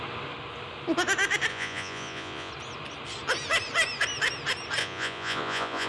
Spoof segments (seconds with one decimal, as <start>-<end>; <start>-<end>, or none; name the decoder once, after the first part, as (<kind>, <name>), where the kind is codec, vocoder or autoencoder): 1.5-2.5 (vocoder, Vocos); 4.8-5.9